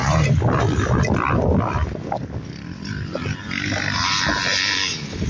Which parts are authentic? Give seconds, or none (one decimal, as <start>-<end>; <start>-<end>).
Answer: 0.0-5.3